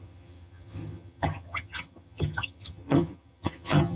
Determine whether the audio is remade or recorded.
remade